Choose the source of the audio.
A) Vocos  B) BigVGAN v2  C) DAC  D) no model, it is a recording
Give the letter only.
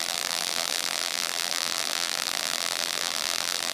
B